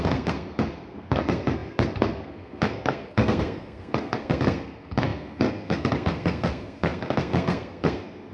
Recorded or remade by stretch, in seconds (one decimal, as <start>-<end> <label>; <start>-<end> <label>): 0.0-8.3 remade